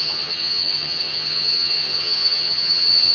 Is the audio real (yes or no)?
no